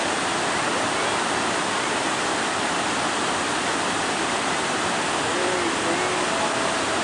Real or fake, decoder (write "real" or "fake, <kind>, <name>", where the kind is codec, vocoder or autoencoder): real